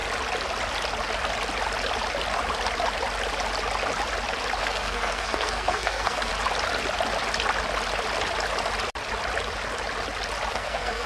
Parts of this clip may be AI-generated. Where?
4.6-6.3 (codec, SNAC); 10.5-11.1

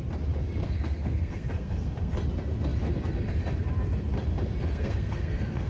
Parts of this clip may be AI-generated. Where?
0.6-2.1 (codec, SNAC); 4.6-5.7